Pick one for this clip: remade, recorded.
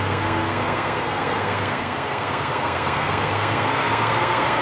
remade